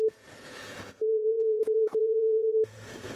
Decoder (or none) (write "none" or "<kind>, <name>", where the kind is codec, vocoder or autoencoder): vocoder, Vocos